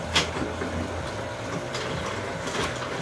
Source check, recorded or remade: recorded